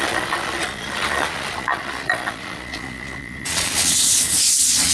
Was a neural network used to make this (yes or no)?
yes